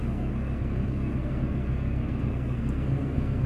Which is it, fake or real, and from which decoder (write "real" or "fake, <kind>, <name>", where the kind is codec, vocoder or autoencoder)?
fake, codec, SNAC